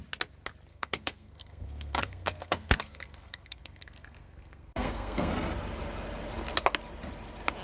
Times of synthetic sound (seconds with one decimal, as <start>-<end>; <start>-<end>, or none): 0.7-5.3